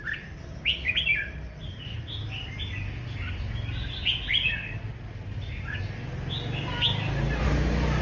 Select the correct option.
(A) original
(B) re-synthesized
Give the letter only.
A